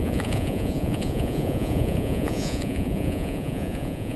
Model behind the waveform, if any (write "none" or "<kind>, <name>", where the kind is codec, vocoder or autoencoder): vocoder, Vocos